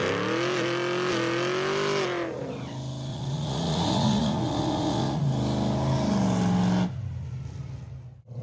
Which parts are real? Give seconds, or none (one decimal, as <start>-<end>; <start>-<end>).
0.0-3.1; 5.2-8.4